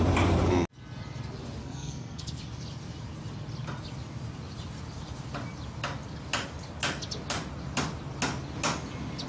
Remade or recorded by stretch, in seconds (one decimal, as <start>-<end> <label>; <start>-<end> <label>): 0.0-1.6 recorded; 1.6-2.4 remade; 2.4-9.3 recorded